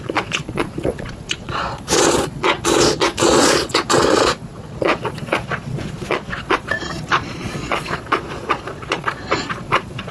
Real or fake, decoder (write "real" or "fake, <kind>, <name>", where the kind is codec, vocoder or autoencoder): fake, vocoder, Vocos